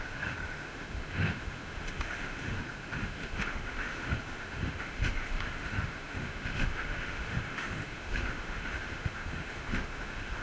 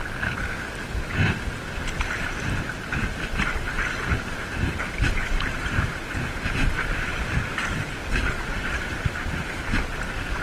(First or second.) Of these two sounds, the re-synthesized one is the first